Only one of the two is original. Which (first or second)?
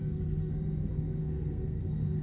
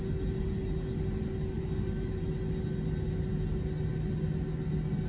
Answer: second